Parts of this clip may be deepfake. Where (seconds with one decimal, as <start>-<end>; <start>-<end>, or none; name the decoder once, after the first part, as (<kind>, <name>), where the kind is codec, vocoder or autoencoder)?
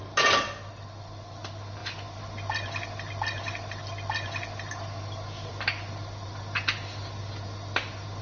none